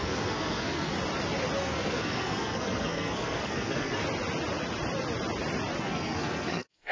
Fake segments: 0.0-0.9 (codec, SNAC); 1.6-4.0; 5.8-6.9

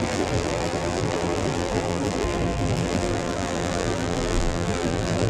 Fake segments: 0.0-5.3 (vocoder, BigVGAN v2)